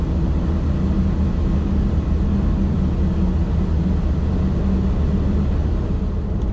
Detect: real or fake real